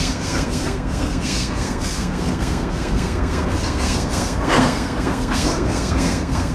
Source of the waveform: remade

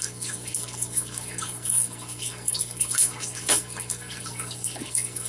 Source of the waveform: remade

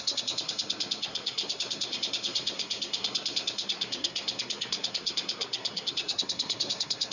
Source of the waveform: remade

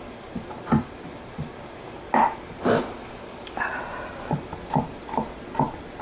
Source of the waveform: recorded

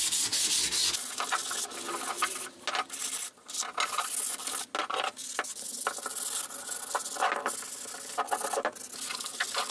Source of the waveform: recorded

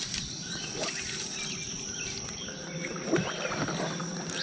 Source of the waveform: recorded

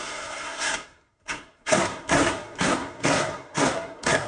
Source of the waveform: remade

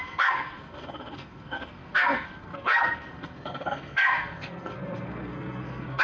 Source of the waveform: remade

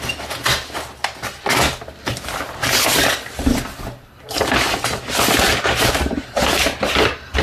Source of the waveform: recorded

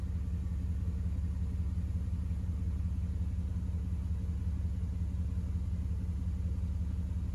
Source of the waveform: recorded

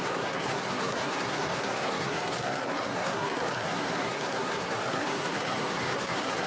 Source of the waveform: remade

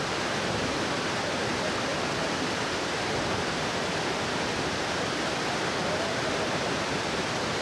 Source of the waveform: recorded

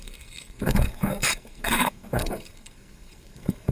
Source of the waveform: remade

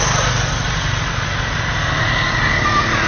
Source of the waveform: recorded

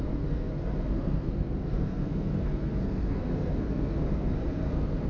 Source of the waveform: remade